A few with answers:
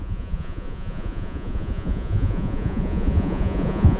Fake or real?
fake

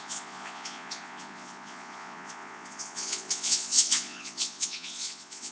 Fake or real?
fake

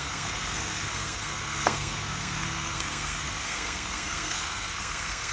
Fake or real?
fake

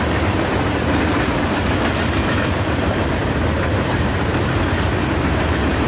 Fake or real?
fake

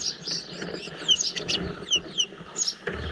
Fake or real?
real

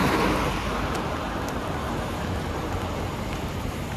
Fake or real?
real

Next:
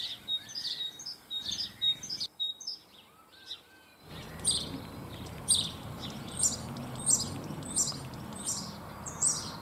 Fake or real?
fake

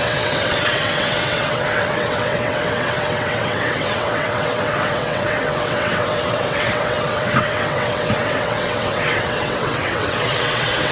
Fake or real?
fake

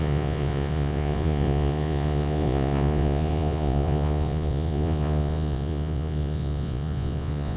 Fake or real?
fake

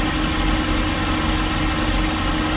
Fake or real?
real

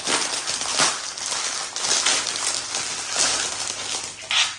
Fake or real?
real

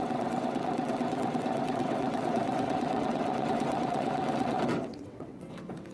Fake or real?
fake